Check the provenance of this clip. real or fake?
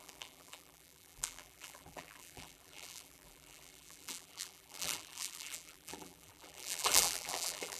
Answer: fake